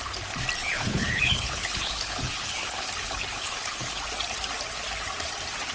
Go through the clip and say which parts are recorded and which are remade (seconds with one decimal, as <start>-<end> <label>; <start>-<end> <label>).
0.0-0.6 recorded; 0.6-4.0 remade; 4.0-5.7 recorded